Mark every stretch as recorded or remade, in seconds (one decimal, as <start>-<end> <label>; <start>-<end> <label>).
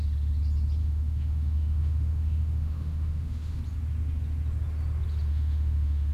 0.0-0.8 recorded; 0.8-3.6 remade; 3.6-5.3 recorded; 5.3-6.1 remade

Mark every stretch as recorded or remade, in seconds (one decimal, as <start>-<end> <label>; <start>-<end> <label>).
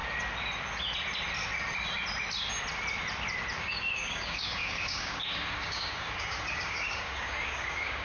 0.0-3.6 recorded; 3.6-8.0 remade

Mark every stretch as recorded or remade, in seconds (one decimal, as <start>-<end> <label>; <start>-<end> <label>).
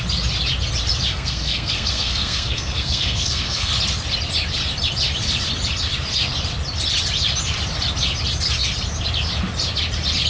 0.0-1.1 recorded; 1.1-3.7 remade; 3.7-10.3 recorded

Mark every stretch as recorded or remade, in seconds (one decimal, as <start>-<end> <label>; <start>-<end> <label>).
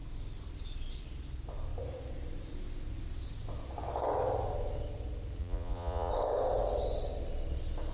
0.0-5.4 recorded; 5.4-6.1 remade; 6.1-7.9 recorded